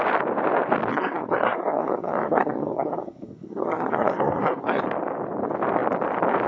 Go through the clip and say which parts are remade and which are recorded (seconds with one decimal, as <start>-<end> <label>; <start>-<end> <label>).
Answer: 0.0-0.9 recorded; 0.9-4.8 remade; 4.8-6.5 recorded